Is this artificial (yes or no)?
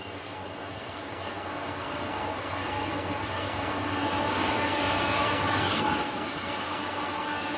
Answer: yes